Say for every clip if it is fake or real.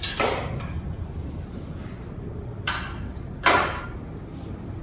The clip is real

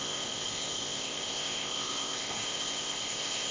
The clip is fake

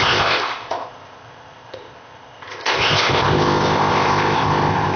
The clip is fake